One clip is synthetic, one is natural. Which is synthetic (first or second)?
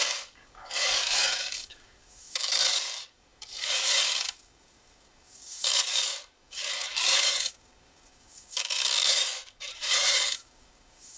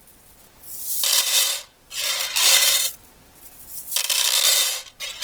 first